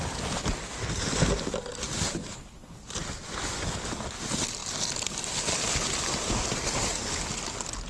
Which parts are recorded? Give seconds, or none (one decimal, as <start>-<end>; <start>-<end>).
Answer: 0.0-2.3; 2.8-7.9